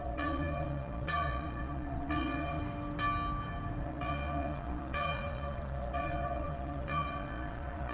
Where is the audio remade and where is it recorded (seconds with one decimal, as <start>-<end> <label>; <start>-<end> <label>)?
0.0-2.6 remade; 2.6-3.8 recorded; 3.8-7.9 remade